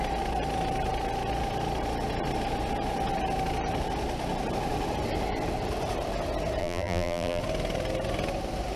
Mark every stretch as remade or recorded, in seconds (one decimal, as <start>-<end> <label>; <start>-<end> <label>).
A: 0.0-6.6 recorded; 6.6-7.4 remade; 7.4-8.8 recorded